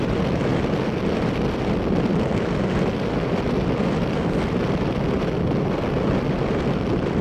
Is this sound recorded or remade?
recorded